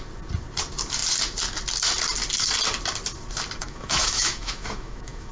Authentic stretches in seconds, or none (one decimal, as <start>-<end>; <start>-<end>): 0.0-3.6